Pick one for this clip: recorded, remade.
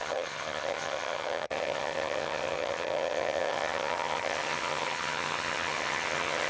remade